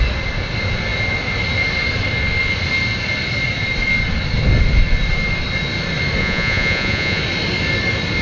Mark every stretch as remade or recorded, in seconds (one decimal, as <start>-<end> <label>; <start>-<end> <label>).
0.0-6.2 recorded; 6.2-7.2 remade; 7.2-8.2 recorded